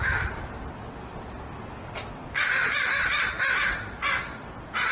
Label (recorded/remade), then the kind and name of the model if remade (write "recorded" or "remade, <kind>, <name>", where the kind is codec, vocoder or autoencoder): recorded